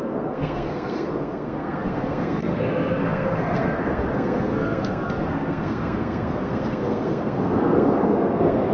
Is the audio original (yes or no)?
no